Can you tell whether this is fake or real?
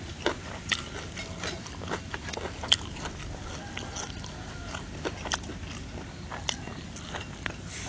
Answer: real